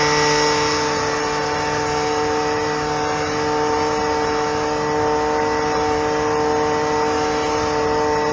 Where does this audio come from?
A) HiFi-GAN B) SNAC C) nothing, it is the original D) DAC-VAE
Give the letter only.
C